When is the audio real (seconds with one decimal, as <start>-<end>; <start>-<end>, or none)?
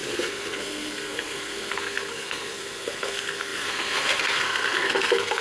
none